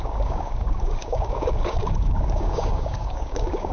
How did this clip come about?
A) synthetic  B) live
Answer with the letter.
A